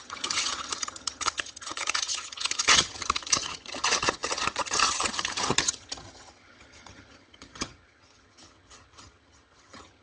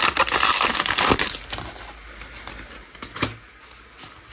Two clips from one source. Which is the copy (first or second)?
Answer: first